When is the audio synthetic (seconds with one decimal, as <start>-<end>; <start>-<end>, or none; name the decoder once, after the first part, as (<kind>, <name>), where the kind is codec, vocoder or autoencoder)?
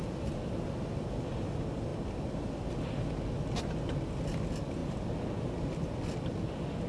none